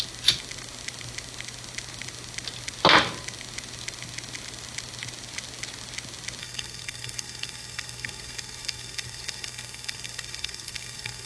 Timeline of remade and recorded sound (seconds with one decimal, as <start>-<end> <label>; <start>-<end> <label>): 0.0-6.4 recorded; 6.4-11.3 remade